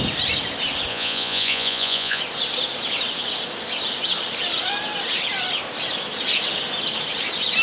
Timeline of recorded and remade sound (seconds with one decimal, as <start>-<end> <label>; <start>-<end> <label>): 0.0-0.9 recorded; 0.9-2.2 remade; 2.2-7.6 recorded